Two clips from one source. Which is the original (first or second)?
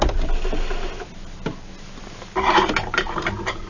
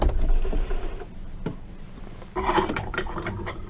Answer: first